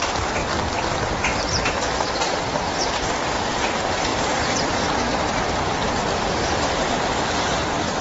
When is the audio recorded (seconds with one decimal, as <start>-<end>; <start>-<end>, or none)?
0.4-0.9